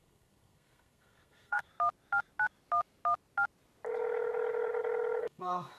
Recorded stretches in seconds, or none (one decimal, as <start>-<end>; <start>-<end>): 1.7-5.2